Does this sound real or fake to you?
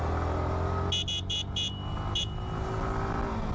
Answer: real